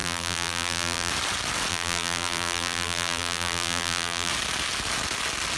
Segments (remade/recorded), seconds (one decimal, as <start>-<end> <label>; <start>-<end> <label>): 0.0-1.1 remade; 1.1-1.7 recorded; 1.7-4.3 remade; 4.3-5.6 recorded